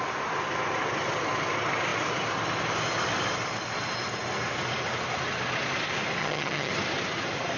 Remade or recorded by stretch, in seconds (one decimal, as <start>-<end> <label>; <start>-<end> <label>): 0.0-6.2 recorded; 6.2-6.7 remade; 6.7-7.6 recorded